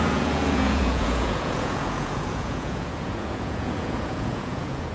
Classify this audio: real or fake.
fake